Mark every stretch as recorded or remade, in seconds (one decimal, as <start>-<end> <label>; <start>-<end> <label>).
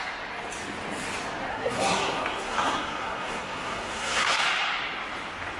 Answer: 0.0-1.5 recorded; 1.5-4.4 remade; 4.4-5.6 recorded